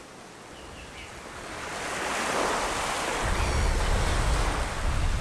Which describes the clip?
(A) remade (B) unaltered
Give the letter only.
B